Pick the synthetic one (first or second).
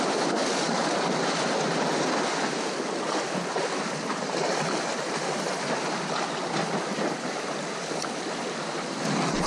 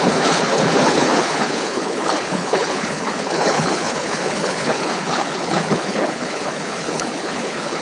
second